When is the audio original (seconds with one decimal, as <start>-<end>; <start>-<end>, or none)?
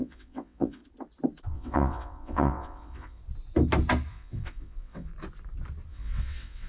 0.8-1.5; 3.2-4.1; 5.1-5.9